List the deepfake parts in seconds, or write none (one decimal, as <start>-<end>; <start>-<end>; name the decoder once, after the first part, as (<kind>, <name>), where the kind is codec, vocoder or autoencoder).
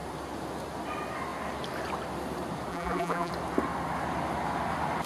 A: 2.7-3.3 (vocoder, BigVGAN v2)